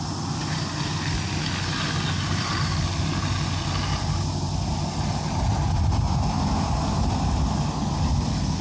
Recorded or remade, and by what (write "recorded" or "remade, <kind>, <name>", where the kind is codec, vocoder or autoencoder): recorded